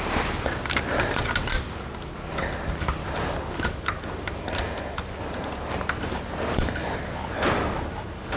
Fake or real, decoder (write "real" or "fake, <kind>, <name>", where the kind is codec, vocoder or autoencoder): real